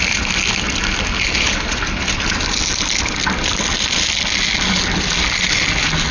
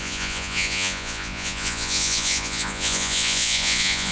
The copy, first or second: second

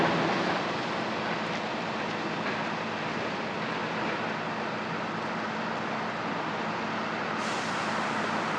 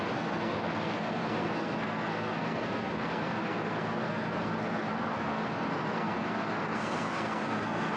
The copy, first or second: second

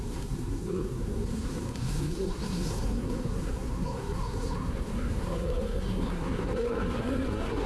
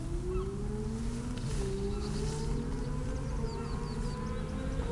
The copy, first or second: first